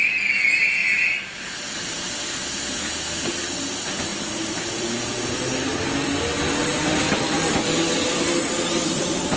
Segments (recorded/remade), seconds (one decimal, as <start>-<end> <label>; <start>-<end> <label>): 0.0-0.8 recorded; 0.8-2.1 remade; 2.1-4.1 recorded; 4.1-5.4 remade; 5.4-8.0 recorded; 8.0-8.5 remade; 8.5-9.4 recorded